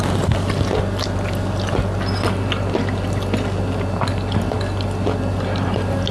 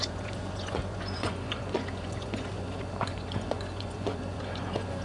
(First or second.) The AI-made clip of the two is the second